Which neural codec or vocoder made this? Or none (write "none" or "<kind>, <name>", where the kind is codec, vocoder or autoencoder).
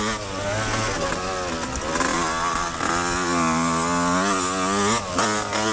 none